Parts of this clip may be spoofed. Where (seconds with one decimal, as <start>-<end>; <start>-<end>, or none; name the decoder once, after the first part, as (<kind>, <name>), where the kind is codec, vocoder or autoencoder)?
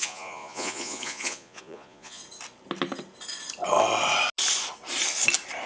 0.0-2.2 (vocoder, Vocos)